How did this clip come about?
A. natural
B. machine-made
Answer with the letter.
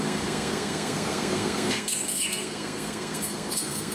B